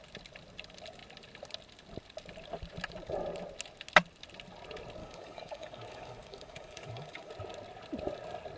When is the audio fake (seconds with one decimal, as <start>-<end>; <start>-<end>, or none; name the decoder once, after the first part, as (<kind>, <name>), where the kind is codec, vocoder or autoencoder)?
5.0-7.3 (codec, DAC)